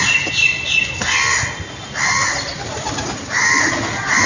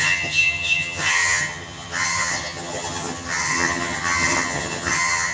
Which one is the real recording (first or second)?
first